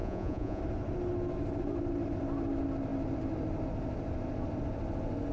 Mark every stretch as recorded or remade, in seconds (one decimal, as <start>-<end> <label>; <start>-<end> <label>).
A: 0.0-0.6 remade; 0.6-5.3 recorded